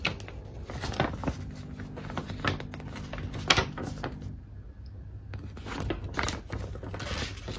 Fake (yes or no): no